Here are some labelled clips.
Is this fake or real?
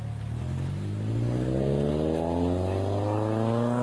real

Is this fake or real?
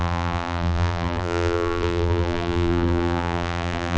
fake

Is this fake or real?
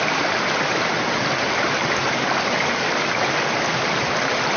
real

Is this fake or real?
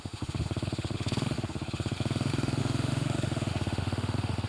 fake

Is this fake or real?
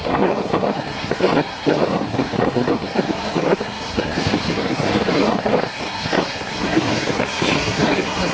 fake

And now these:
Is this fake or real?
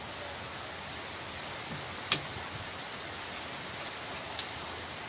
real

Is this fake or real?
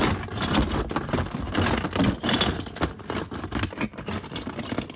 real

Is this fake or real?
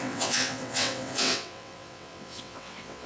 fake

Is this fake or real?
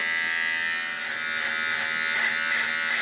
real